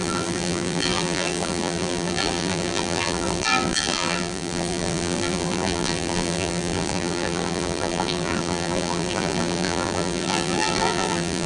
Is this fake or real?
fake